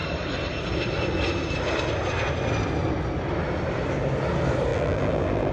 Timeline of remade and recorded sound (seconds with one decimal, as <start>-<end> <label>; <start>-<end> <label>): 0.0-4.7 recorded; 4.7-5.5 remade